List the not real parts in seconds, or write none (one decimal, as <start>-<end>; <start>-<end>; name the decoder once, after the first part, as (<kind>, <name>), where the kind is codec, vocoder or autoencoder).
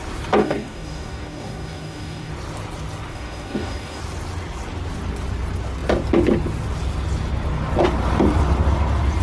0.4-2.3 (codec, DAC); 3.1-4.0